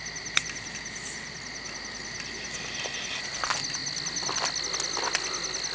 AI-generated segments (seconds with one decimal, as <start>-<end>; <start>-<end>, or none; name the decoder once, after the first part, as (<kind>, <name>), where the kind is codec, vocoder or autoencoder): none